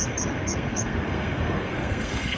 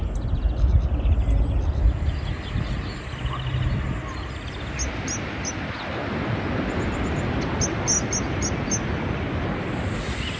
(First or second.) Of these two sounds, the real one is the second